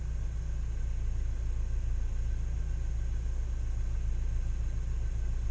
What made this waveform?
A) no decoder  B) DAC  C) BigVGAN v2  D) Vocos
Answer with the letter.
A